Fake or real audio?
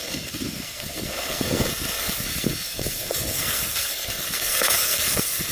fake